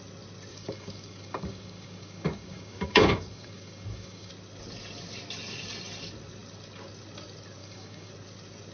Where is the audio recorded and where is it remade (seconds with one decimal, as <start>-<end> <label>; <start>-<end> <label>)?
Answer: 0.0-0.5 recorded; 0.5-4.3 remade; 4.3-7.6 recorded; 7.6-8.1 remade; 8.1-8.7 recorded